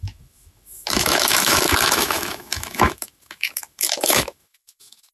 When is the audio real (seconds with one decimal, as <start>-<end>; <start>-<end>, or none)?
none